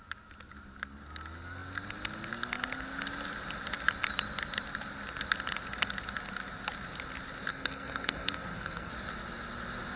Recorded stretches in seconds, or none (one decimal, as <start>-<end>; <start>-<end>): 0.0-7.5; 8.9-10.0